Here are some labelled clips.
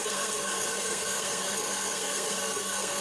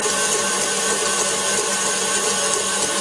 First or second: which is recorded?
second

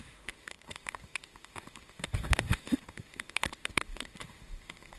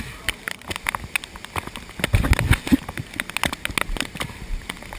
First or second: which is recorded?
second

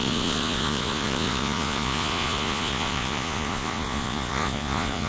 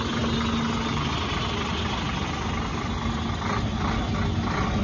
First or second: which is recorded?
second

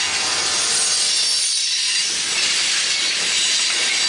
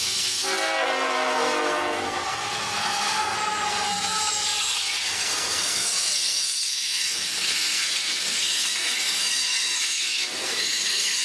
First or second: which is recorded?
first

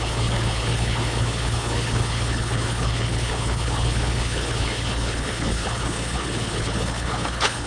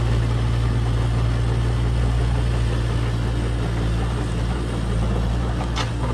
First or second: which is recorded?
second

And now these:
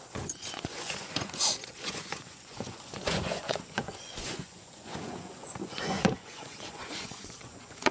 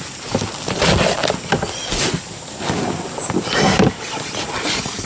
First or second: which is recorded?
second